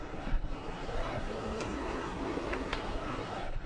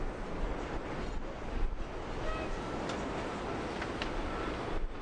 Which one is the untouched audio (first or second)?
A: second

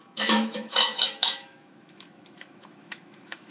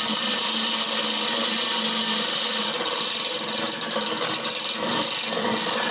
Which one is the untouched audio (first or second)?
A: second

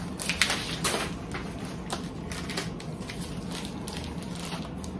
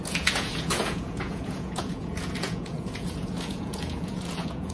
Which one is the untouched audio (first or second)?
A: first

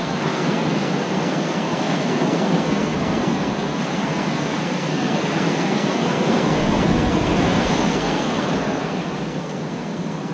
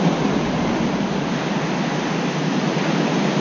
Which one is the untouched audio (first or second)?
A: second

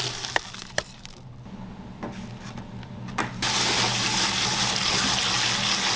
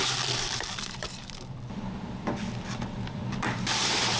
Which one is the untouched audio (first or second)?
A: first